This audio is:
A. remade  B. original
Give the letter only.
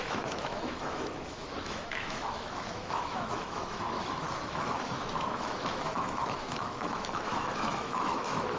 A